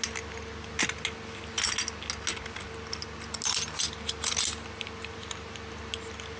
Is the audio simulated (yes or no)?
no